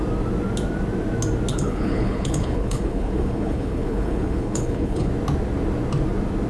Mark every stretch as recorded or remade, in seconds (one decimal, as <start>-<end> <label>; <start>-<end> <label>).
0.0-1.5 recorded; 1.5-5.1 remade; 5.1-6.5 recorded